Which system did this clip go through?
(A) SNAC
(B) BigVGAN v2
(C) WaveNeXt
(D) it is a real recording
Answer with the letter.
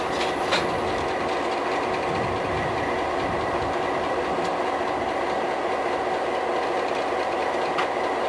D